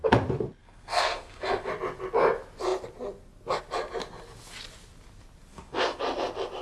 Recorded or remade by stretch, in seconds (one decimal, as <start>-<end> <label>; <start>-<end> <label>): 0.0-0.6 recorded; 0.6-1.7 remade; 1.7-5.5 recorded; 5.5-6.0 remade; 6.0-6.6 recorded